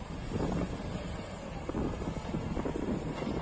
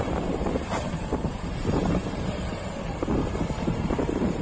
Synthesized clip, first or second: second